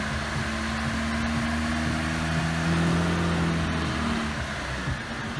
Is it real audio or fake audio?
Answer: real